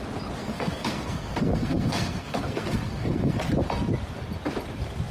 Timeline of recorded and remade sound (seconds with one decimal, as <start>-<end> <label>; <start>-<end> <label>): 0.0-0.4 recorded; 0.4-3.4 remade; 3.4-5.1 recorded